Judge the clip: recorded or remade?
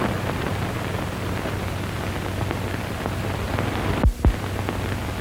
recorded